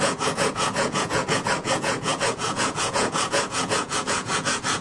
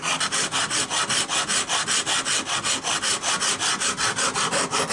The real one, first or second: second